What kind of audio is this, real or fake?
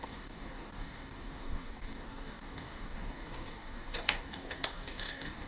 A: fake